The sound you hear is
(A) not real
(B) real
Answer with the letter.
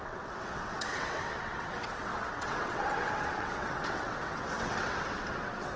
A